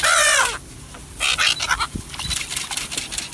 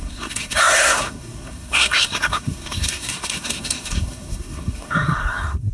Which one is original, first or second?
first